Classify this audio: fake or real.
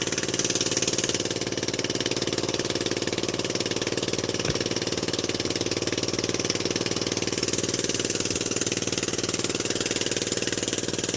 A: real